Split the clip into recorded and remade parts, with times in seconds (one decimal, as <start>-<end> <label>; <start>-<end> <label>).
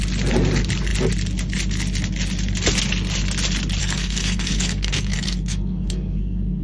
0.0-3.8 recorded; 3.8-6.6 remade